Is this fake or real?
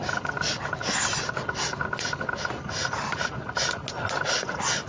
real